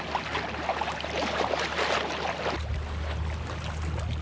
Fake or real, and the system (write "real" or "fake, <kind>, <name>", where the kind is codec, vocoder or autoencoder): real